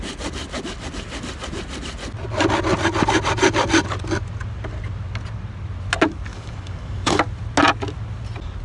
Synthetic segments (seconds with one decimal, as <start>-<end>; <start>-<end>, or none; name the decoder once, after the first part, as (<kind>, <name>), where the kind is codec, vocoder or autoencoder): 6.3-7.2 (codec, DAC)